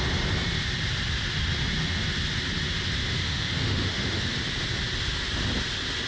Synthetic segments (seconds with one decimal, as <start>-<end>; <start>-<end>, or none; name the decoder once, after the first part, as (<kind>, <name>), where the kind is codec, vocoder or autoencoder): 3.2-4.2 (autoencoder, DAC-VAE)